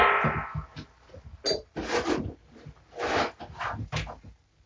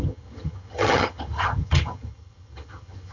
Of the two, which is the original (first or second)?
first